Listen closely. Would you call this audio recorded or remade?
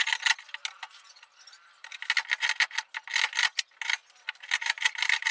recorded